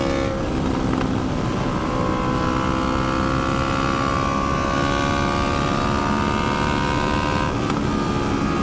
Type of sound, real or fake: real